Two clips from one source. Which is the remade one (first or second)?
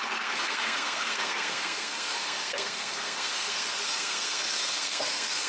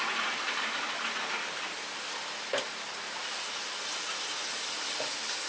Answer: first